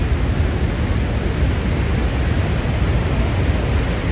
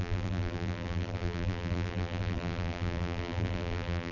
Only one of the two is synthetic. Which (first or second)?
second